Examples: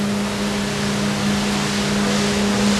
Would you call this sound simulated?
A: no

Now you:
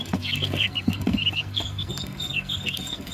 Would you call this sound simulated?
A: yes